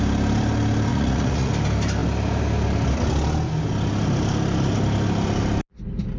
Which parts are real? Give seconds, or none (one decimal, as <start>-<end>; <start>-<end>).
0.0-0.9; 1.5-6.2